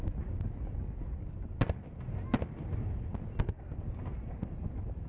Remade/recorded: recorded